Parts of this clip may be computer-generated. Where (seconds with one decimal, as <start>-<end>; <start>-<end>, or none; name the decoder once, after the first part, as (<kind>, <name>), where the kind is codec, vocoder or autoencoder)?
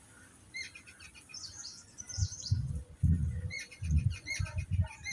1.3-4.4 (vocoder, Vocos)